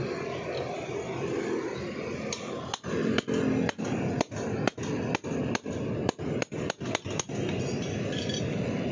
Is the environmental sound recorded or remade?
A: recorded